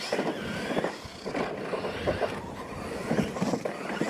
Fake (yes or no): no